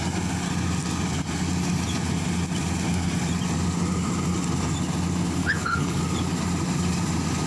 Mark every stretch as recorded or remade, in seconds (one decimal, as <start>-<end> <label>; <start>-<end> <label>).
0.0-5.4 recorded; 5.4-6.0 remade; 6.0-7.5 recorded